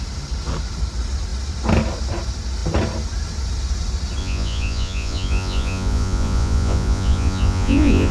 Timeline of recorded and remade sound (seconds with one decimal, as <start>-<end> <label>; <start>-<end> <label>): 0.0-4.2 recorded; 4.2-8.1 remade